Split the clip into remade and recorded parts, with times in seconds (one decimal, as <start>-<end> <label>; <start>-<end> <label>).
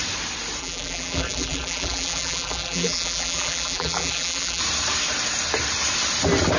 0.0-0.6 recorded; 0.6-4.6 remade; 4.6-6.6 recorded